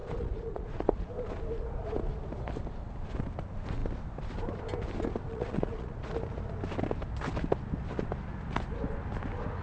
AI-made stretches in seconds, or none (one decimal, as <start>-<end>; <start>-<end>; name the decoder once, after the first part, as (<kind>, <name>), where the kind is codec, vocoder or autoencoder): 0.0-1.1 (vocoder, Vocos); 5.3-6.1